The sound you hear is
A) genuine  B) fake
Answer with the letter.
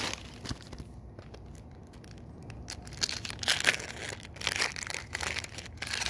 A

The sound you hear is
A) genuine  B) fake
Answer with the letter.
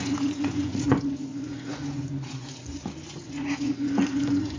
B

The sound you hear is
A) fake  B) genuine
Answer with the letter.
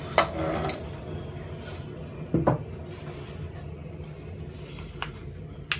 B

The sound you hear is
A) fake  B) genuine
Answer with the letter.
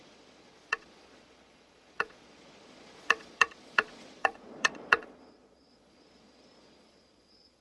A